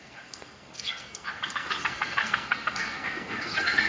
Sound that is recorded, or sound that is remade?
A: remade